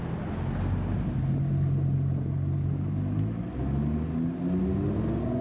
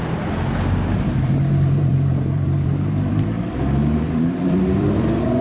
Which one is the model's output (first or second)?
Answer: second